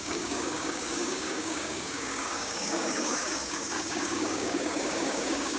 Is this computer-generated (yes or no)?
yes